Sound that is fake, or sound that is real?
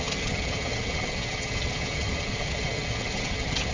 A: fake